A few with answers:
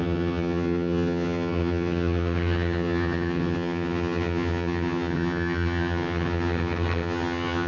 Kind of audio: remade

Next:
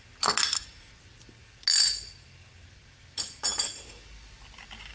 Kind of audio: recorded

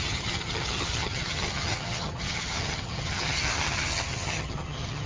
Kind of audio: remade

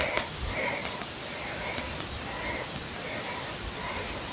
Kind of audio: recorded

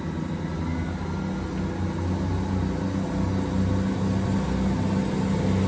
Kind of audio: recorded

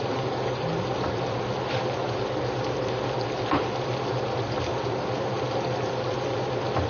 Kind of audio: recorded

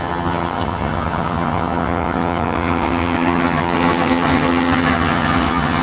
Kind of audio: remade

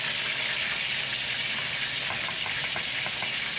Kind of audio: recorded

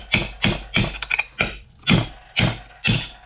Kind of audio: recorded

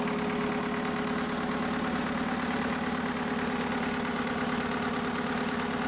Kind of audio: recorded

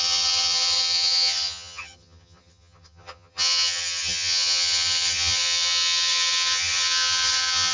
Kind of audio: remade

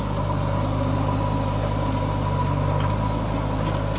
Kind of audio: recorded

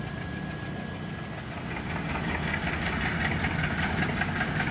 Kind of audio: recorded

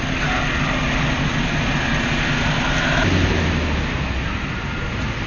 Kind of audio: recorded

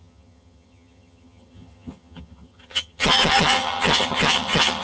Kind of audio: remade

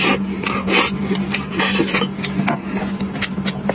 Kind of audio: recorded